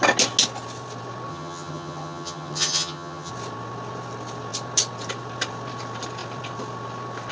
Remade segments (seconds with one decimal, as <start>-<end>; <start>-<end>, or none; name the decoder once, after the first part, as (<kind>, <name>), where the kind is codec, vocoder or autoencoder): 1.3-3.3 (vocoder, HiFi-GAN)